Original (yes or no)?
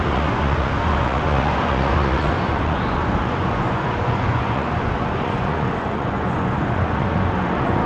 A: no